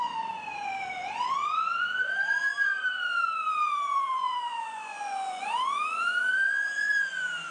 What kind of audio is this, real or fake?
fake